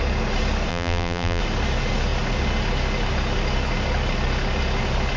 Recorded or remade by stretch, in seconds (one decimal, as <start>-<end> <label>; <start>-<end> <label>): 0.0-0.7 recorded; 0.7-1.4 remade; 1.4-5.2 recorded